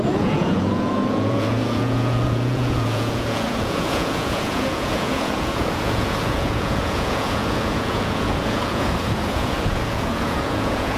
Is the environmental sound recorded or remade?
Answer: remade